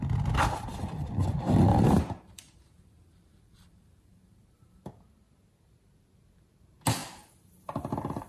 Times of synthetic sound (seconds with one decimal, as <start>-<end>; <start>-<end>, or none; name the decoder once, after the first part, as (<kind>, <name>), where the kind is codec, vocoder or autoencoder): 1.7-4.8 (vocoder, BigVGAN v2)